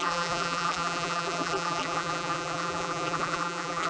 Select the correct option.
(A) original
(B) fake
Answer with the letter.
B